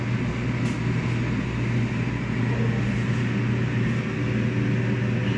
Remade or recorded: recorded